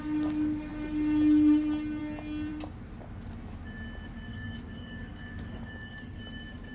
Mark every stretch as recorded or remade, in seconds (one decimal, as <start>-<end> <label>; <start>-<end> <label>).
0.0-4.3 recorded; 4.3-6.2 remade; 6.2-6.7 recorded